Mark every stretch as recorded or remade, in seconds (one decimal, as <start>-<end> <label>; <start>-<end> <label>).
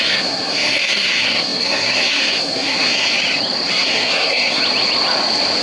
0.0-3.1 remade; 3.1-3.7 recorded; 3.7-4.6 remade; 4.6-5.6 recorded